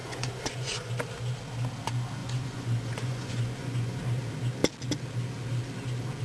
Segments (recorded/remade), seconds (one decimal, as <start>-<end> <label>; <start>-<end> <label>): 0.0-0.9 remade; 0.9-2.2 recorded; 2.2-4.0 remade; 4.0-6.2 recorded